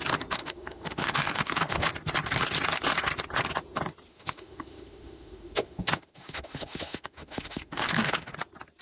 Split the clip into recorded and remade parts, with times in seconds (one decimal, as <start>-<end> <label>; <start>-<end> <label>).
0.0-0.4 recorded; 0.4-1.9 remade; 1.9-4.1 recorded; 4.1-8.3 remade; 8.3-8.8 recorded